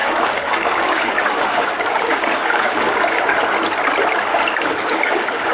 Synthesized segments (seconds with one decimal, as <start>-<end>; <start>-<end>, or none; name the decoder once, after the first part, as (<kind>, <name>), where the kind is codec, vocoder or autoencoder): 0.0-3.3 (codec, DAC); 4.3-5.5